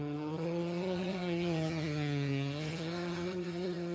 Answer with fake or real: fake